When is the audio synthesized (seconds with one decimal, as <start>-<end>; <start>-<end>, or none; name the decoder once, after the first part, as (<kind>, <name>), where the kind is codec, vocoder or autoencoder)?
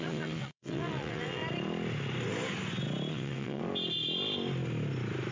0.0-1.4 (vocoder, WaveNeXt); 3.1-3.6